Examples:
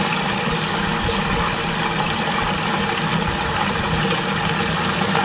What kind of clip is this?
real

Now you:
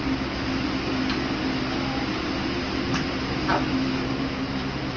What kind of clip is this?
real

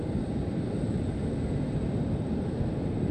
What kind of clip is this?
fake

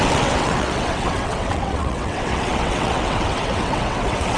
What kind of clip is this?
fake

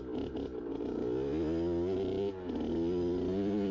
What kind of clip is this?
real